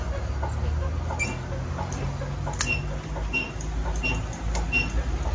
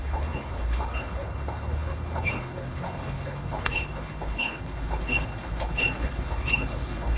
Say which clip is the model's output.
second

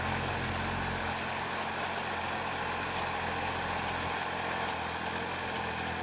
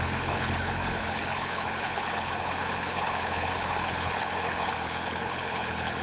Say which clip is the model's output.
second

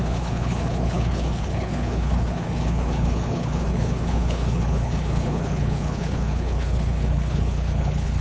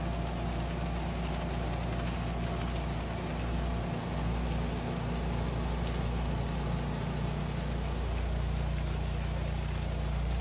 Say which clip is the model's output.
first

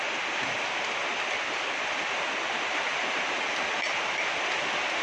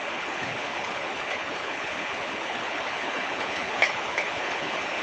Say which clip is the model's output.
second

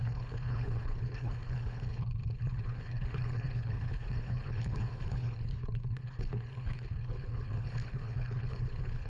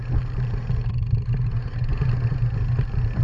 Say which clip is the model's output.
first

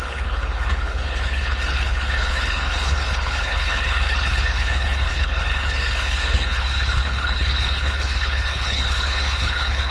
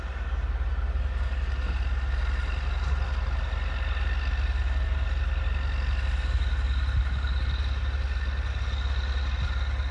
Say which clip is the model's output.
first